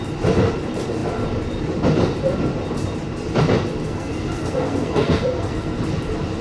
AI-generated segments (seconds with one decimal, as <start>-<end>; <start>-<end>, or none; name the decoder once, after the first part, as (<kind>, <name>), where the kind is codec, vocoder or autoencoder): 3.8-5.8 (codec, SNAC)